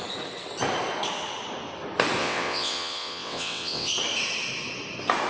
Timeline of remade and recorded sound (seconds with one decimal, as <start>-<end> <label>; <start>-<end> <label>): 0.0-2.2 recorded; 2.2-3.9 remade; 3.9-5.3 recorded